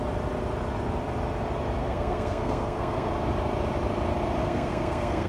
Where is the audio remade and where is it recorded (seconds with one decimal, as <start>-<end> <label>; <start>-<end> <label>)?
0.0-1.8 recorded; 1.8-3.1 remade; 3.1-4.4 recorded; 4.4-5.3 remade